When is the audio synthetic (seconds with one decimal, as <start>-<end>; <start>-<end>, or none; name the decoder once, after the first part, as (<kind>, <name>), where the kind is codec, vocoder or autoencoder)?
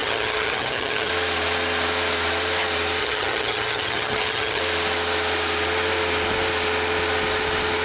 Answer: 0.0-1.1 (vocoder, HiFi-GAN); 3.0-4.6